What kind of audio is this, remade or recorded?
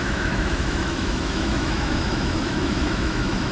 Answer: remade